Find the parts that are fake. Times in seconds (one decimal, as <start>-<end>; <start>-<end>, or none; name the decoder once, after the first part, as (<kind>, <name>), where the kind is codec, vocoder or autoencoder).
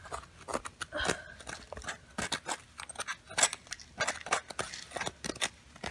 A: none